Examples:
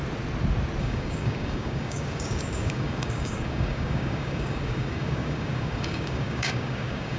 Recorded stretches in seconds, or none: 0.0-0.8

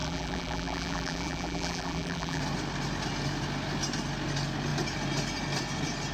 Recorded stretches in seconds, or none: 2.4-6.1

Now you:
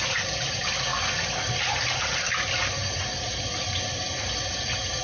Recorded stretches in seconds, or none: 0.0-5.0

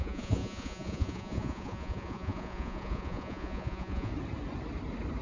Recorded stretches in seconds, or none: 4.1-5.2

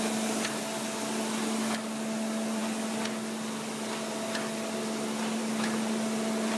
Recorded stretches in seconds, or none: 0.0-6.6

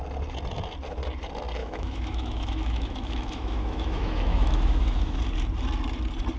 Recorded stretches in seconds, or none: 0.0-1.6; 5.2-6.4

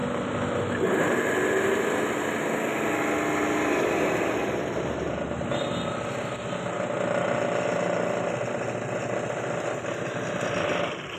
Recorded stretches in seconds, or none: 0.0-11.2